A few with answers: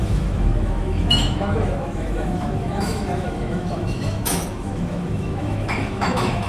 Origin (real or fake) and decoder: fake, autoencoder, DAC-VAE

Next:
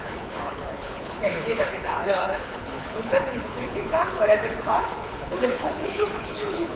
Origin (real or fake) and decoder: fake, codec, HILCodec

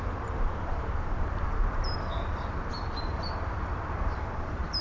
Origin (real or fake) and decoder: fake, vocoder, BigVGAN v2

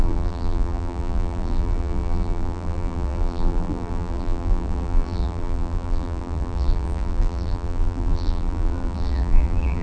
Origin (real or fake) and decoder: fake, vocoder, BigVGAN v2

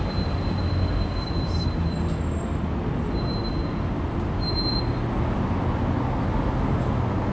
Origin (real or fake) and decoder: real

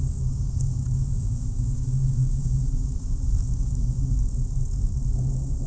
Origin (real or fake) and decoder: fake, autoencoder, DAC-VAE